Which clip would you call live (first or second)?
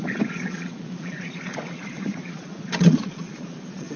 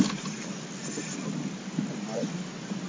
second